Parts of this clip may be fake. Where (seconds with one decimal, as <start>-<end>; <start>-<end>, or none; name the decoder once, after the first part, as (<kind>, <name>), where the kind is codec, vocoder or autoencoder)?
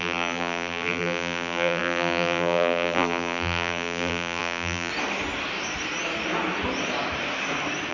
0.0-4.9 (vocoder, BigVGAN v2)